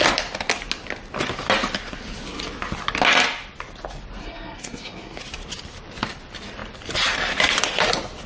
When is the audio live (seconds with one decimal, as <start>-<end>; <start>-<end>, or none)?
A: 0.0-4.2; 5.2-8.3